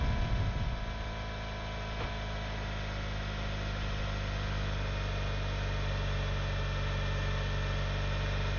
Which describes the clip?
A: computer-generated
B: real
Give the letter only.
B